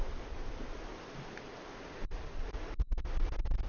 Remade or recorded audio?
recorded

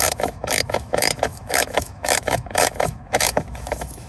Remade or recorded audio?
remade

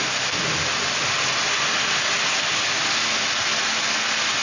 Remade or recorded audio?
recorded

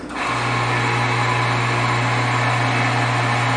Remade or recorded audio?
recorded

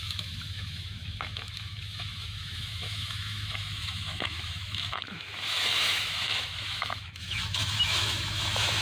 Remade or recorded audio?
remade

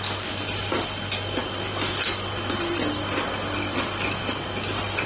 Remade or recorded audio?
recorded